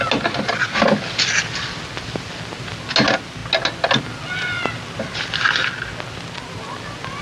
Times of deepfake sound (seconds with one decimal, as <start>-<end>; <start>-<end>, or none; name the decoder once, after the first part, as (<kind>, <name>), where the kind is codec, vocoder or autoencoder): none